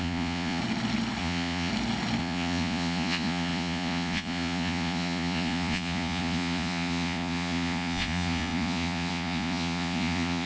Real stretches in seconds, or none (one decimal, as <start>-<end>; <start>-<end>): 0.6-1.2; 1.7-2.2